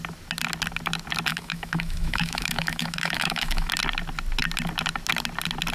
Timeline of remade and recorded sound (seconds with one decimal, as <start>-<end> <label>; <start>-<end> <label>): 0.0-1.3 recorded; 1.3-3.7 remade; 3.7-5.7 recorded